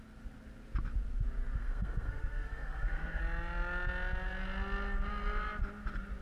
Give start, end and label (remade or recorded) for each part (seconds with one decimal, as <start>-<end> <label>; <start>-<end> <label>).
0.0-1.6 recorded; 1.6-3.2 remade; 3.2-6.2 recorded